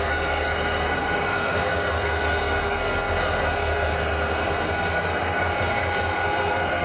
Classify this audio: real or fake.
fake